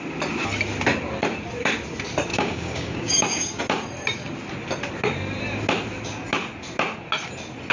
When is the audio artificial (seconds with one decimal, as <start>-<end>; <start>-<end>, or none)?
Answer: 2.3-3.6